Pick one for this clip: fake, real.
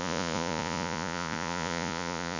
fake